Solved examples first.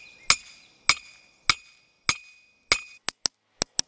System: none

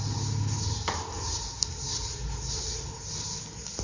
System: none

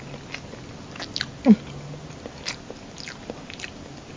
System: none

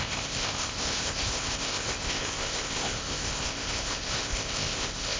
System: codec, ZipCodec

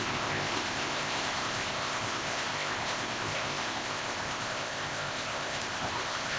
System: codec, ZipCodec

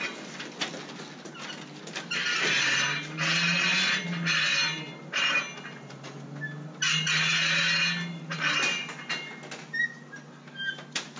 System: none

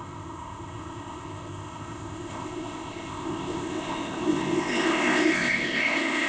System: codec, ZipCodec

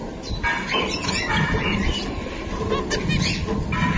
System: none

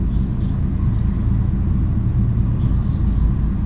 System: none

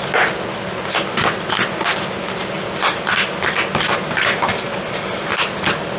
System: none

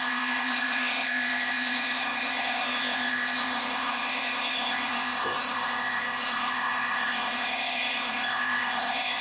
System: codec, ZipCodec